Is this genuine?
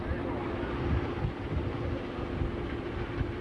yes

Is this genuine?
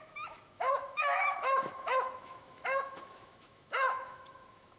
no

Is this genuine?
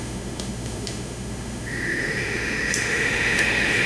no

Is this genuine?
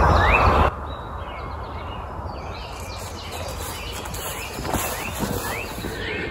yes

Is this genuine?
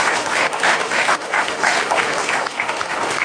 no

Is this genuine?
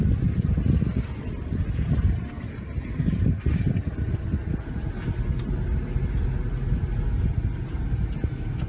yes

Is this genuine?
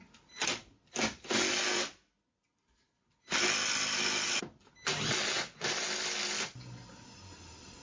yes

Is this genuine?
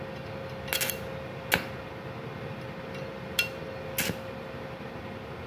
yes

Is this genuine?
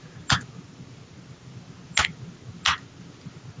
yes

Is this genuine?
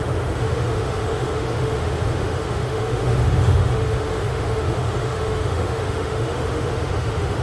no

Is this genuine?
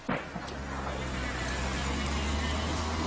yes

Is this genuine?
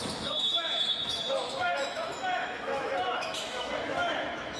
no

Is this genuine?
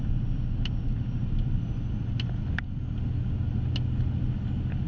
yes